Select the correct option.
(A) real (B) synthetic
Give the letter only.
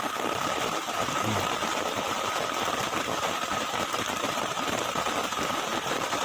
B